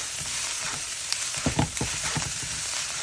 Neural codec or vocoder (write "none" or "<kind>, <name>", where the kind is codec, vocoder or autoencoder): vocoder, BigVGAN v2